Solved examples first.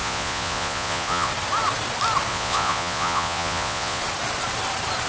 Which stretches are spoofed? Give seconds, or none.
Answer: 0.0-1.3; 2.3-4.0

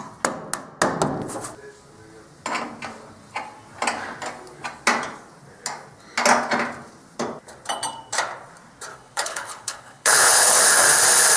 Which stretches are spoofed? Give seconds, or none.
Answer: 8.9-10.6

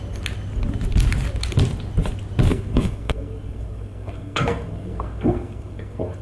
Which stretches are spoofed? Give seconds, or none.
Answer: 2.5-6.2

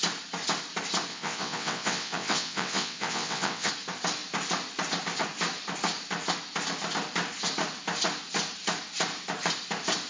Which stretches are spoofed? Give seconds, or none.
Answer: 1.1-3.7

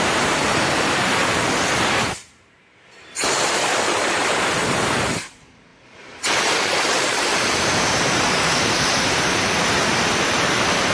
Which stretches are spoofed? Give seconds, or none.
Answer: 0.0-10.9

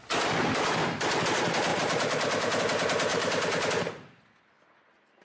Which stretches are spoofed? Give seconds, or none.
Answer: 1.7-2.6; 3.1-3.7

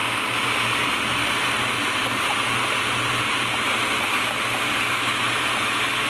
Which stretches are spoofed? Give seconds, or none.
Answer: none

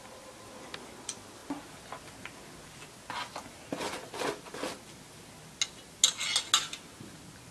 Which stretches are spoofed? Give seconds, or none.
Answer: none